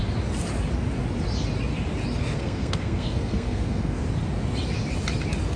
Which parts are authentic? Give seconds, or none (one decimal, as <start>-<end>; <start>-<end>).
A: 0.0-2.2; 4.0-5.6